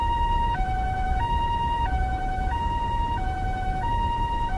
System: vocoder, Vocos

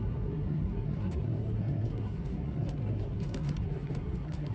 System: codec, SNAC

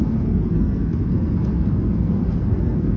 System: codec, SNAC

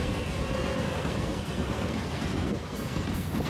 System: codec, SNAC